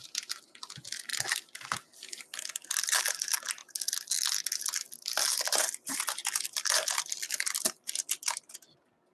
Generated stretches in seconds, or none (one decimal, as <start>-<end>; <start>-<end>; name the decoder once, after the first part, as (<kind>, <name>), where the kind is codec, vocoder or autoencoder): none